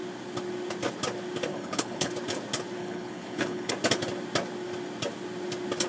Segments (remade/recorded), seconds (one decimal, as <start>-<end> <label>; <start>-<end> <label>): 0.0-1.5 recorded; 1.5-2.1 remade; 2.1-2.8 recorded; 2.8-3.7 remade; 3.7-5.9 recorded